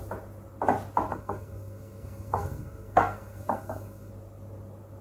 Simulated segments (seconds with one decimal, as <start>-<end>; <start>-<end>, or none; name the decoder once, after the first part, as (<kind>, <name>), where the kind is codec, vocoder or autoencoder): 1.1-4.1 (codec, SNAC)